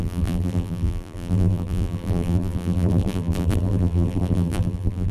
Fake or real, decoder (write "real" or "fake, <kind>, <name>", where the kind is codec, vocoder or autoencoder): fake, vocoder, BigVGAN v2